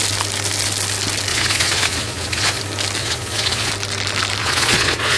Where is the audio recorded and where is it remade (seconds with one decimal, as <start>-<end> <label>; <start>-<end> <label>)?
0.0-1.3 recorded; 1.3-2.6 remade; 2.6-3.0 recorded; 3.0-3.7 remade; 3.7-4.4 recorded; 4.4-5.2 remade